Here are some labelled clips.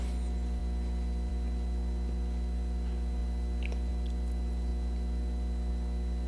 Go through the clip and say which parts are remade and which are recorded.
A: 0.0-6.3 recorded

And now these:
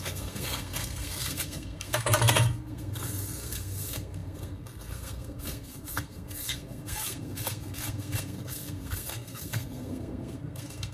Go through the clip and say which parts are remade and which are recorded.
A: 0.0-10.9 remade

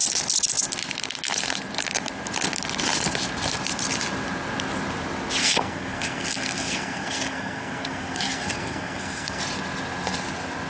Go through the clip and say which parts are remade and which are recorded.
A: 0.0-5.4 recorded; 5.4-9.4 remade; 9.4-10.7 recorded

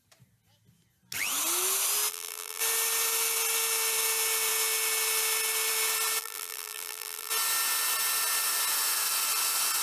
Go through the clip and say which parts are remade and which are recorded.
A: 0.0-2.1 recorded; 2.1-2.6 remade; 2.6-6.2 recorded; 6.2-7.3 remade; 7.3-9.8 recorded

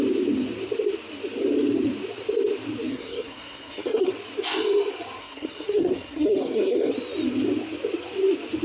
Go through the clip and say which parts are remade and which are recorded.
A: 0.0-2.9 recorded; 2.9-4.1 remade; 4.1-5.2 recorded; 5.2-6.9 remade; 6.9-8.6 recorded

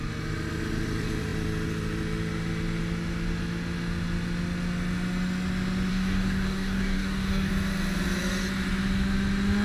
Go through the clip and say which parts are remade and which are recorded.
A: 0.0-5.9 recorded; 5.9-7.5 remade; 7.5-9.6 recorded